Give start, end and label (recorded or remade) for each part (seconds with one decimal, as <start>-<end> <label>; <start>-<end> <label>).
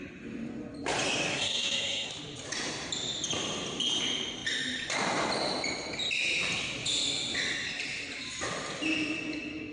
0.0-1.3 recorded; 1.3-2.1 remade; 2.1-9.7 recorded